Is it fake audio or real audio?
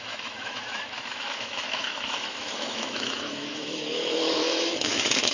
fake